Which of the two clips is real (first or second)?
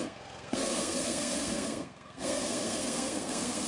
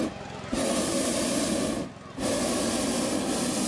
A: second